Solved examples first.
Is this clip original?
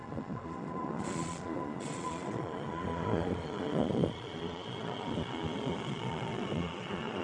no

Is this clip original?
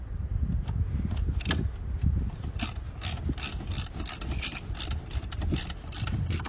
yes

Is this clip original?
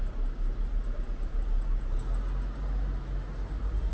yes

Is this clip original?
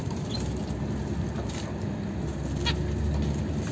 yes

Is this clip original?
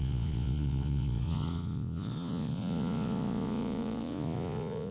no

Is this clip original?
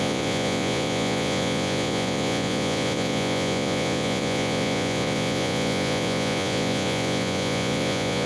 no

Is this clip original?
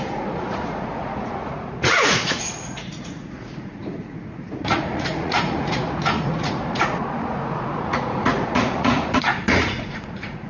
no